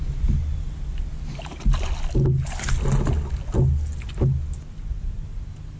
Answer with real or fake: real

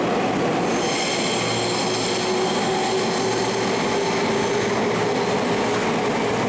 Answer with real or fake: real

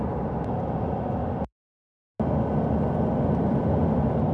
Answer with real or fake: real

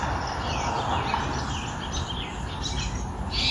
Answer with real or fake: real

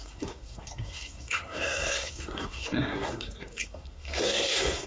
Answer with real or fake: fake